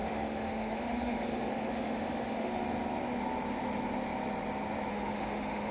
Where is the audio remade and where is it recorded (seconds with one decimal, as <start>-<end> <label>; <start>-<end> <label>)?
0.0-2.5 remade; 2.5-4.9 recorded; 4.9-5.7 remade